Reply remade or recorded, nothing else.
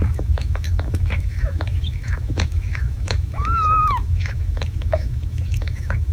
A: remade